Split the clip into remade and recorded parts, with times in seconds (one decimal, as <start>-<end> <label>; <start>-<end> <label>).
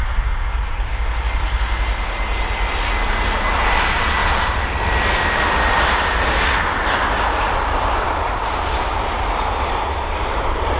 0.0-10.8 recorded